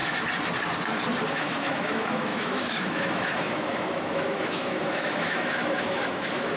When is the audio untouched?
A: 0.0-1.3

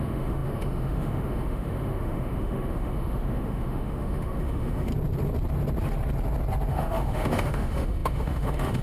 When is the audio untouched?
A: 4.9-6.7